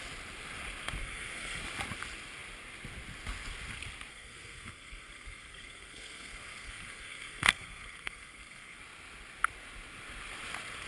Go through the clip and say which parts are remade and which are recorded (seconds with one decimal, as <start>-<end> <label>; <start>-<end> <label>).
0.0-1.0 recorded; 1.0-1.6 remade; 1.6-4.1 recorded; 4.1-8.8 remade; 8.8-10.9 recorded